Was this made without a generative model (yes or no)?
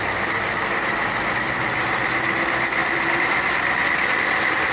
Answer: no